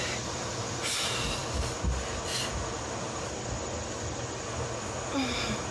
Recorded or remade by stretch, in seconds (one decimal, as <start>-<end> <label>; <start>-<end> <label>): 0.0-5.7 recorded